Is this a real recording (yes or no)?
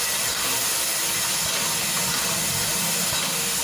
yes